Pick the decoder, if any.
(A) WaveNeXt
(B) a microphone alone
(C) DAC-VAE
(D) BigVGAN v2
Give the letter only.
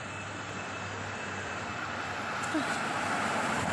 D